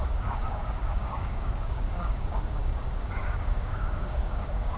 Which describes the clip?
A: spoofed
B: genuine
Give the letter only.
A